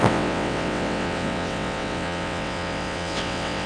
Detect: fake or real fake